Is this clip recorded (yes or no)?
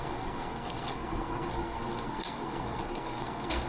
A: no